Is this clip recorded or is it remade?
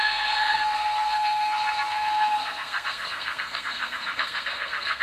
remade